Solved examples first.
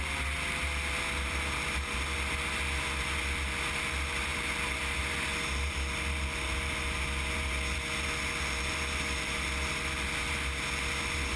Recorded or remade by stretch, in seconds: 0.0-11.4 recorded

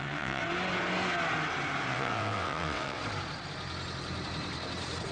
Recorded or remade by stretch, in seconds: 0.0-0.4 remade; 0.4-1.9 recorded; 1.9-3.0 remade; 3.0-5.1 recorded

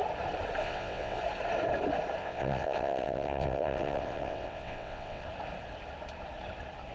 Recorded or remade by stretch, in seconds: 0.0-0.6 recorded; 0.6-1.2 remade; 1.2-2.2 recorded; 2.2-5.2 remade; 5.2-6.9 recorded

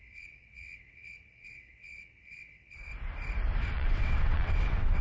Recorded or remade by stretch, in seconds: 0.0-2.9 remade; 2.9-3.7 recorded; 3.7-5.0 remade

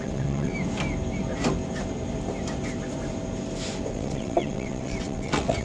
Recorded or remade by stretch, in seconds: 0.0-0.5 remade; 0.5-3.9 recorded; 3.9-5.6 remade

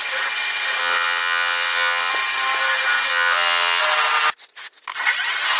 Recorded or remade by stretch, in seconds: 0.0-0.8 recorded; 0.8-2.1 remade; 2.1-3.1 recorded; 3.1-3.8 remade; 3.8-5.6 recorded